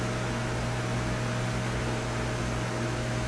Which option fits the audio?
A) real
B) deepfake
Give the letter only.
A